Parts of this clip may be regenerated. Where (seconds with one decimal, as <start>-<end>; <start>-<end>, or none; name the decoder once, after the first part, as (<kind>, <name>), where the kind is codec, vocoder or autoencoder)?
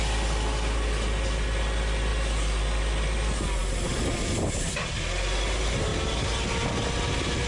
none